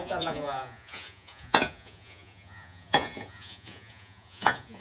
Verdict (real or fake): fake